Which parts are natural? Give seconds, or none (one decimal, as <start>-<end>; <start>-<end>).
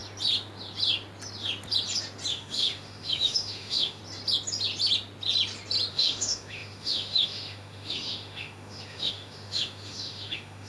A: 0.0-2.3; 4.0-5.9